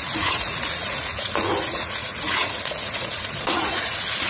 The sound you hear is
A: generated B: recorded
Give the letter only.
A